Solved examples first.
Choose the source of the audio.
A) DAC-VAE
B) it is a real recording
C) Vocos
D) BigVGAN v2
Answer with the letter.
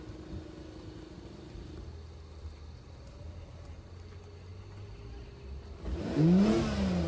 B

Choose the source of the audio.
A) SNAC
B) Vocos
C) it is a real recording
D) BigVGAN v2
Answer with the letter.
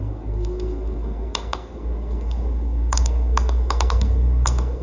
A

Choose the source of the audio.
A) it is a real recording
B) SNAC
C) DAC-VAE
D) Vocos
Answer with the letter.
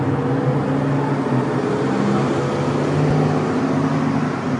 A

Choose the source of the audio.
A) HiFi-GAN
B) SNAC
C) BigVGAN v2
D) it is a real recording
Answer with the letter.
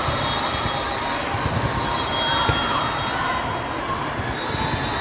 D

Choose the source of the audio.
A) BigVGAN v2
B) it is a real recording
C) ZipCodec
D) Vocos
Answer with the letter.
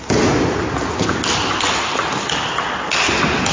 B